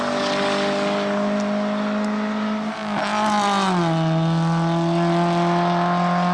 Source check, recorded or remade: recorded